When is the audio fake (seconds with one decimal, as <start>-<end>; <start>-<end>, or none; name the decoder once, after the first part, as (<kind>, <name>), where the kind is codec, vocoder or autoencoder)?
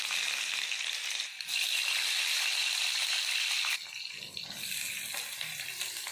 none